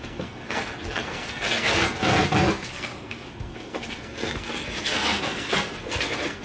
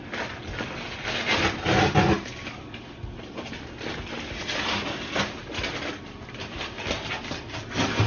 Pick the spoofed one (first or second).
first